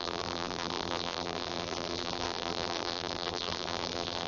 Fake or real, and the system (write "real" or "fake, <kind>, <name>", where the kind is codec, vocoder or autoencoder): fake, vocoder, BigVGAN v2